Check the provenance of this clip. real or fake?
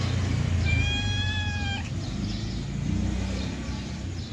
real